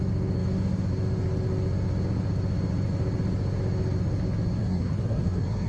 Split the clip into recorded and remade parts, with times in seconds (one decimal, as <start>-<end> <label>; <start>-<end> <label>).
0.0-4.6 recorded; 4.6-5.7 remade